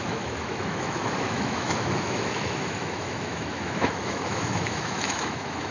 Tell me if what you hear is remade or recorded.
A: remade